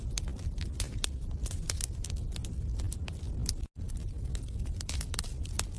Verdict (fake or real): real